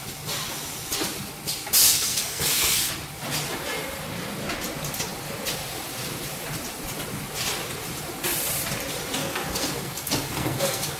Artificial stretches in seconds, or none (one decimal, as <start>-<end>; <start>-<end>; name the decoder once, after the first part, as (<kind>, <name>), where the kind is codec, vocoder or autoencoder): 1.8-2.9 (codec, SNAC); 9.2-11.0